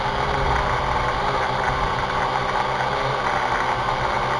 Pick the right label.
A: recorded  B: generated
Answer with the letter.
A